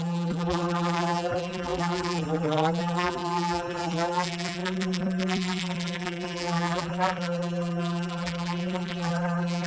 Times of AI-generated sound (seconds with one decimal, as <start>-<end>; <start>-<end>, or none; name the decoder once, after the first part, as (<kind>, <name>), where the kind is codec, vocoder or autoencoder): 0.0-9.7 (vocoder, BigVGAN v2)